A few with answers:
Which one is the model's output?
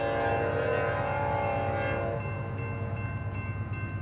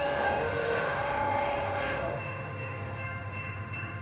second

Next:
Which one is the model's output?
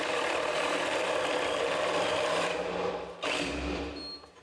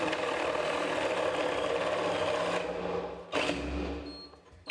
first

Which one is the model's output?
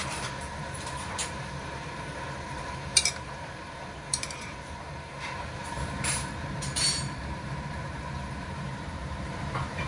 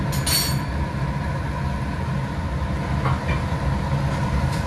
first